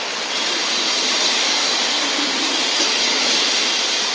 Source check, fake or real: real